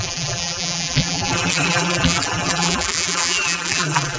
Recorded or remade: remade